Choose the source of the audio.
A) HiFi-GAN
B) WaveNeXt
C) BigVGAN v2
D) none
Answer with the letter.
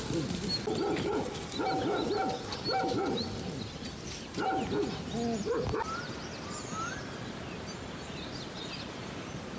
D